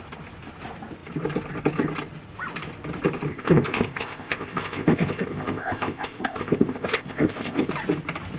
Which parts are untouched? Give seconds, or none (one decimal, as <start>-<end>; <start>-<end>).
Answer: 0.0-3.3; 7.7-8.4